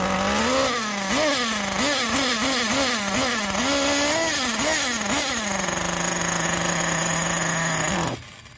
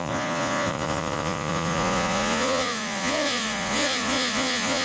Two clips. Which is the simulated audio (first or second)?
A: second